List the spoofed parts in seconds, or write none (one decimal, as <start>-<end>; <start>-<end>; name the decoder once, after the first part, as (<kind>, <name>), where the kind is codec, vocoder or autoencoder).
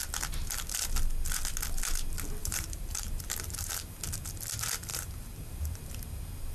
2.4-3.9 (vocoder, BigVGAN v2); 4.9-5.8